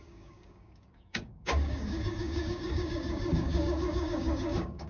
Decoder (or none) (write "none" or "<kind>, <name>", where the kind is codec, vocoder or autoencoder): codec, DAC